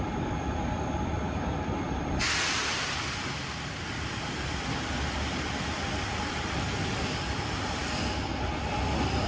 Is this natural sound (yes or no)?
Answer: no